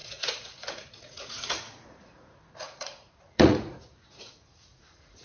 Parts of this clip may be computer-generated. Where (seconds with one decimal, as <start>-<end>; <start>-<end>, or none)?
0.0-5.2